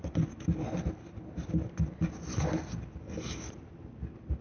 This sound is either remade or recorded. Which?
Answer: recorded